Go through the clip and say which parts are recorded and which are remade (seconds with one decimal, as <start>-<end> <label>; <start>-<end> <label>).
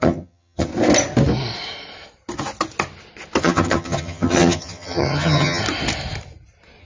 0.0-0.7 remade; 0.7-3.4 recorded; 3.4-5.6 remade; 5.6-6.8 recorded